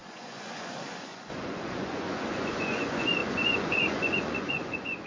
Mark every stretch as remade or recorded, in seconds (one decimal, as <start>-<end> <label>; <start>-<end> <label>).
0.0-5.1 remade